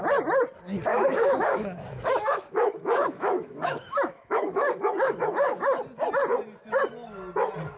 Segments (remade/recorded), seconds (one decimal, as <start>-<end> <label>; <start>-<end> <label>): 0.0-0.9 recorded; 0.9-5.6 remade; 5.6-7.8 recorded